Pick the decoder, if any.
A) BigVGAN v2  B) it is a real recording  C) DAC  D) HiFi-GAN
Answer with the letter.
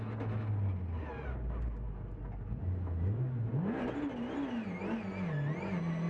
B